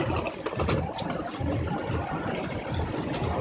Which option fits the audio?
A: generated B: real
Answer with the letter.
B